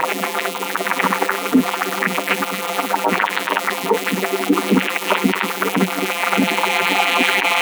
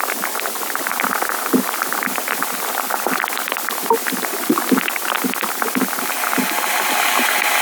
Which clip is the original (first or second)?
second